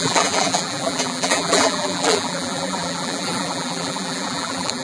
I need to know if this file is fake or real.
fake